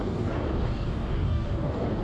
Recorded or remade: remade